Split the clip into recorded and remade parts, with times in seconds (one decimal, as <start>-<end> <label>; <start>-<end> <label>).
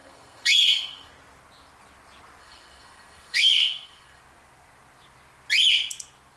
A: 0.0-1.1 remade; 1.1-2.4 recorded; 2.4-4.2 remade; 4.2-6.4 recorded